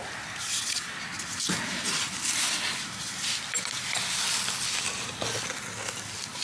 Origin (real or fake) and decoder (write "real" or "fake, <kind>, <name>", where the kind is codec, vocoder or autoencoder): real